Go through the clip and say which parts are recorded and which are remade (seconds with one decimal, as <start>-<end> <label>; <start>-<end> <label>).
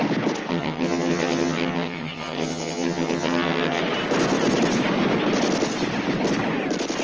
0.0-0.5 recorded; 0.5-3.8 remade; 3.8-7.0 recorded